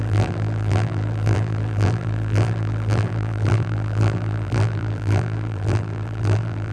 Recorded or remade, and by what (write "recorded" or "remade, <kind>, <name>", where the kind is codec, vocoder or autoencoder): remade, vocoder, BigVGAN v2